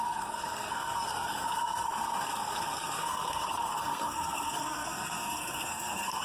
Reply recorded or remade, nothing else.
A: remade